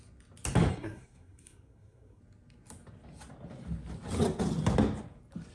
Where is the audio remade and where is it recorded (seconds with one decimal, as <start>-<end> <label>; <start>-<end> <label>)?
0.0-0.7 recorded; 0.7-2.2 remade; 2.2-5.5 recorded